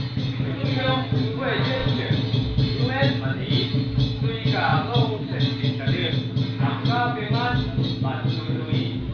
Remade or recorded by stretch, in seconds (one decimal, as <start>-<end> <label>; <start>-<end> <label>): 0.0-1.8 recorded; 1.8-2.8 remade; 2.8-4.7 recorded; 4.7-5.4 remade; 5.4-9.1 recorded